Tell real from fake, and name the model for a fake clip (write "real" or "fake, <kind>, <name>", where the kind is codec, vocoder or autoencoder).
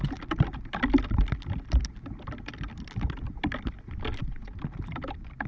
real